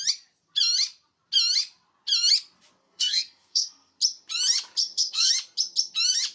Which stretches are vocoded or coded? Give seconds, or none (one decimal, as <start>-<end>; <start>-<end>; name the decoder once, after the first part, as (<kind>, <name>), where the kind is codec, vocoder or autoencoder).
2.8-3.9 (codec, SNAC); 4.8-5.3